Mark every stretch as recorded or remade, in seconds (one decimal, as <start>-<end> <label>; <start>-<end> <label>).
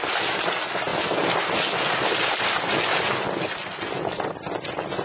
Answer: 0.0-5.0 recorded